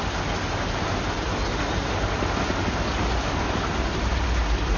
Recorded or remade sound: recorded